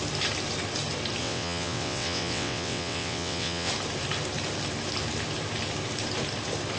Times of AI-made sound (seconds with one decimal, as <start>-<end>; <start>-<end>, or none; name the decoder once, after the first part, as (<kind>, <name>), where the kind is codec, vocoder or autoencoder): 1.2-3.7 (vocoder, WaveNeXt)